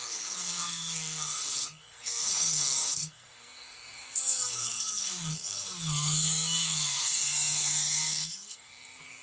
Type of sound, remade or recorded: remade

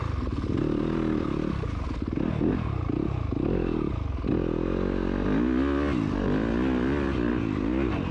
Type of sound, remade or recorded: recorded